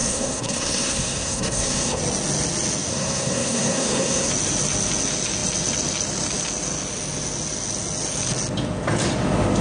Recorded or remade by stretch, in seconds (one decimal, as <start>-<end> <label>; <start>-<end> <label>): 0.0-2.0 remade; 2.0-2.9 recorded; 2.9-4.3 remade; 4.3-9.6 recorded